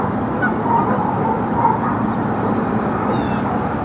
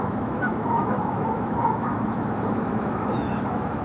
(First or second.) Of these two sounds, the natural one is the first